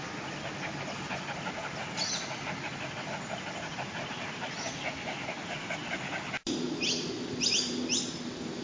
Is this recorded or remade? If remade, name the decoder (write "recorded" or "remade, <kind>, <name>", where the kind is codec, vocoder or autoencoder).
recorded